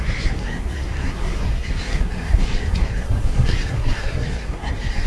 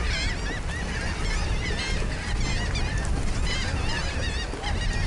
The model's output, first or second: first